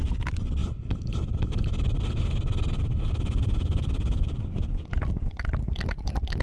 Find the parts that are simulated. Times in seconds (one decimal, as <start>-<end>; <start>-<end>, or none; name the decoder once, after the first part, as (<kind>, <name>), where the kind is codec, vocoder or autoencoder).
0.6-4.4 (vocoder, BigVGAN v2)